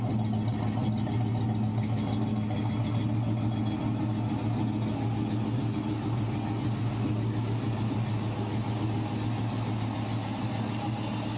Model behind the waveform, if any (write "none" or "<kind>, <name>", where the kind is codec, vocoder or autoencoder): none